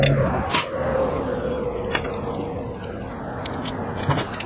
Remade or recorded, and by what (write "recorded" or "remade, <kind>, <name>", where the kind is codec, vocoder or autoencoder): recorded